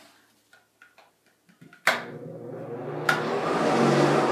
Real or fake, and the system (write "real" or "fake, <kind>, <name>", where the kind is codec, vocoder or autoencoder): real